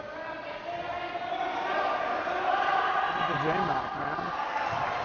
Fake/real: real